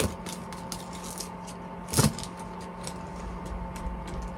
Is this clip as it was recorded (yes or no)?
yes